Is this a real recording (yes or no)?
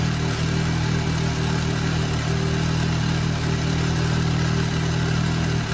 yes